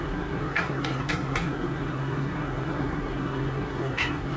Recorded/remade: remade